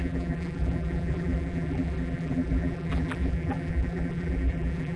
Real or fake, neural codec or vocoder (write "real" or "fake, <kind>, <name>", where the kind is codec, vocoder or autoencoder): fake, vocoder, BigVGAN v2